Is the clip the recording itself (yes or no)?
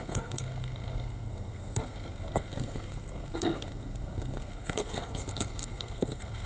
no